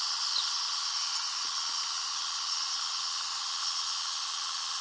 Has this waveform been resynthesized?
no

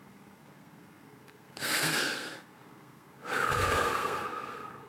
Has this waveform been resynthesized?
yes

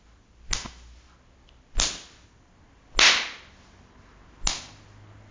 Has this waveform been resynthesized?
no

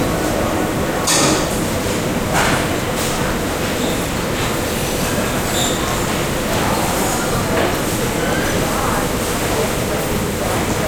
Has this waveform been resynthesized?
no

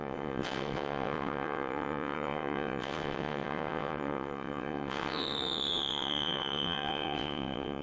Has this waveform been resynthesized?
yes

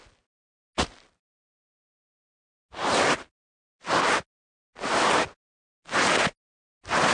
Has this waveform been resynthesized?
no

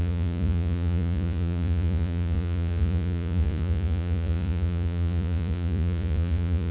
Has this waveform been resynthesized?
yes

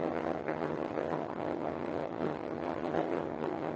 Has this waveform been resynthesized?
yes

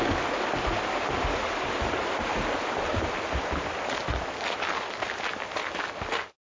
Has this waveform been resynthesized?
no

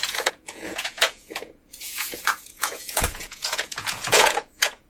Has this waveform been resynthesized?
yes